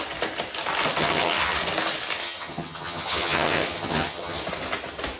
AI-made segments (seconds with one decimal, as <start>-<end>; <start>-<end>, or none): 1.0-1.6; 2.2-4.4